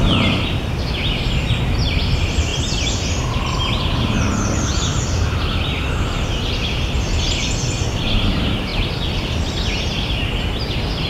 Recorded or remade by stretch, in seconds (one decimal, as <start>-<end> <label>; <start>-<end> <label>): 0.0-11.1 recorded